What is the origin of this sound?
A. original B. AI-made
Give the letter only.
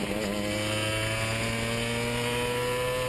A